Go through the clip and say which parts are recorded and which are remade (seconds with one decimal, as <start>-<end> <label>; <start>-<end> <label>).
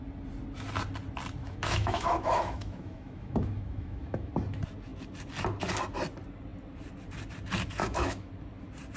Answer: 0.0-1.4 recorded; 1.4-4.3 remade; 4.3-7.8 recorded; 7.8-8.3 remade; 8.3-9.0 recorded